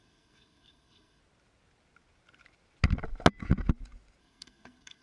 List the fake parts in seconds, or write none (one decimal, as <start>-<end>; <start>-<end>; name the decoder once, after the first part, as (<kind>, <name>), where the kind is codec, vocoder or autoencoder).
0.0-1.2 (codec, SNAC); 4.2-5.0